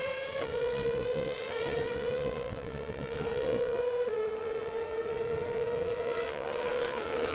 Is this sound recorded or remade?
remade